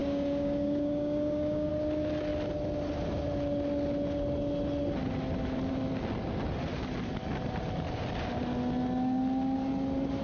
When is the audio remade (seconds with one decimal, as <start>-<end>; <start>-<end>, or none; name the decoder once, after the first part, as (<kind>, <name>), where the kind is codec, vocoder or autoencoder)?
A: 0.0-1.7 (codec, DAC)